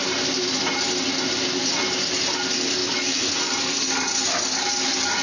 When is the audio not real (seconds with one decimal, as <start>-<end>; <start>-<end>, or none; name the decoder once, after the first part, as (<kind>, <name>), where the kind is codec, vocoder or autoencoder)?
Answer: 2.8-3.3 (autoencoder, DAC-VAE)